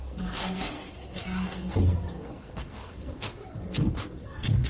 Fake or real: fake